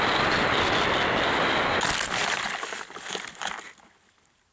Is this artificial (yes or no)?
no